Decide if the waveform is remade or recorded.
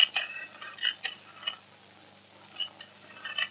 recorded